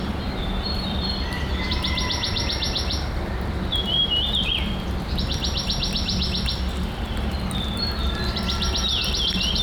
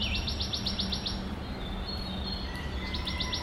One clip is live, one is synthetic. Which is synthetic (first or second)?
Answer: first